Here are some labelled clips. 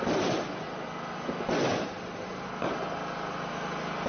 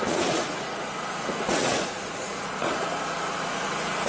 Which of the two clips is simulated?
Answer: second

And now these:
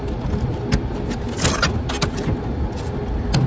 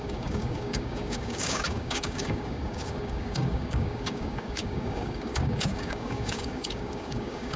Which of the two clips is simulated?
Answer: second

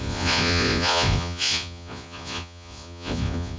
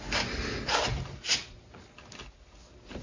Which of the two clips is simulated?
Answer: first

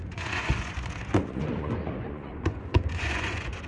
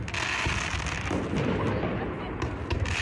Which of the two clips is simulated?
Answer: first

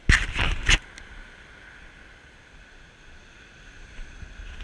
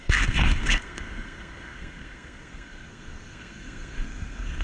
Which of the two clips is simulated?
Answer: second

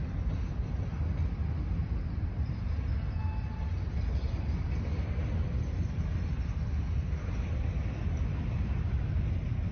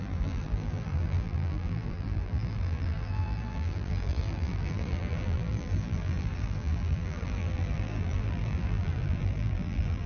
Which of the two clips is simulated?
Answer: second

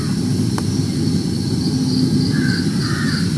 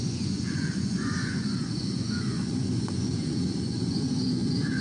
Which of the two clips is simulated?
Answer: second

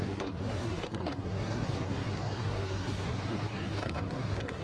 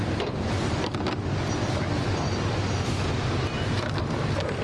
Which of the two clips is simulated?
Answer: first